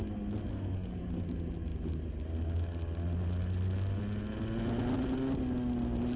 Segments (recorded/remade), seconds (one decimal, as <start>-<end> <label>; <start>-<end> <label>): 0.0-0.5 recorded; 0.5-1.0 remade; 1.0-6.2 recorded